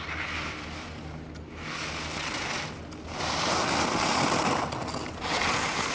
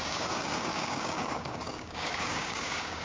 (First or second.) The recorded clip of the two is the first